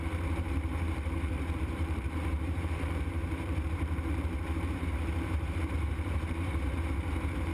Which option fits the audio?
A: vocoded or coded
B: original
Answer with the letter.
A